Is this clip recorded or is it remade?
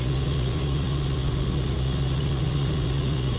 remade